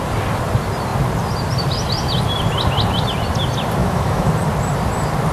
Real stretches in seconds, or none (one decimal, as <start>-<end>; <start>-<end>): 0.0-3.8; 4.3-5.3